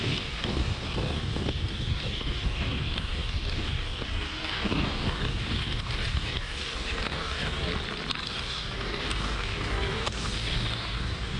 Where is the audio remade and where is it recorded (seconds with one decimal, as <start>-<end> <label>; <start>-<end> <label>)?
0.0-7.7 remade; 7.7-8.2 recorded; 8.2-11.4 remade